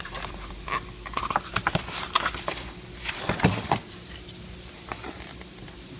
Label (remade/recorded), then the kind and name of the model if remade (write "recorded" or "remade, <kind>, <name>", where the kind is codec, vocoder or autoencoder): remade, vocoder, BigVGAN v2